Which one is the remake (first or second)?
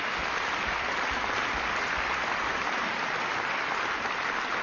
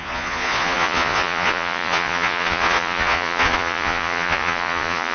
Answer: second